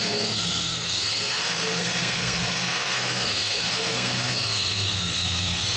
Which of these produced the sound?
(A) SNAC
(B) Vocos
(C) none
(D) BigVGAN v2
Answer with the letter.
A